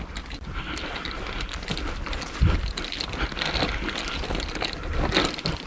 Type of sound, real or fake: real